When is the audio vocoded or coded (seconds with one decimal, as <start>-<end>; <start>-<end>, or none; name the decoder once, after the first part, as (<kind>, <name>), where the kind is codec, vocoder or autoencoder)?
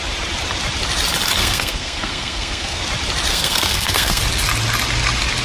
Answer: 1.4-2.8 (codec, SNAC); 3.3-4.2